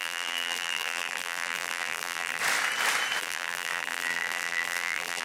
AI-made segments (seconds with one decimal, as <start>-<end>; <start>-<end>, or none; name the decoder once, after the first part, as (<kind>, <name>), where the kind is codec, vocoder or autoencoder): 0.0-2.4 (vocoder, BigVGAN v2); 3.2-5.2